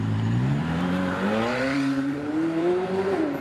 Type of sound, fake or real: fake